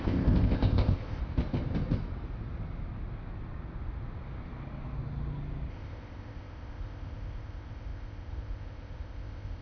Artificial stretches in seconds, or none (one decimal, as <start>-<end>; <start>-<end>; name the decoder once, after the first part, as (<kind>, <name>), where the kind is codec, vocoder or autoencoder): 0.0-1.2 (codec, ZipCodec); 5.7-9.6